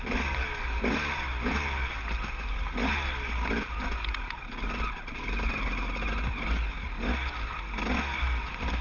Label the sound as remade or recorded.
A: recorded